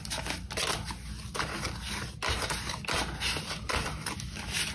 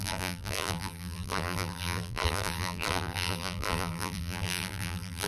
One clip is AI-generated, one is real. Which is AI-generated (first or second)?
second